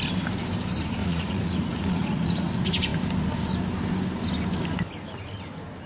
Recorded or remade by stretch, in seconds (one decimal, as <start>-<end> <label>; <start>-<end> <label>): 0.0-1.0 recorded; 1.0-2.5 remade; 2.5-5.9 recorded